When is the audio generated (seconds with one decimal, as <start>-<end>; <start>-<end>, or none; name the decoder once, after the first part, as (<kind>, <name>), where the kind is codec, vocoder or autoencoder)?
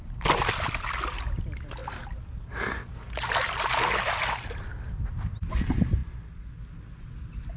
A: none